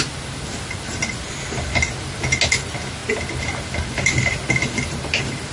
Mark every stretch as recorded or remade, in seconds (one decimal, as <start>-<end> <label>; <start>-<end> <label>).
0.0-5.5 recorded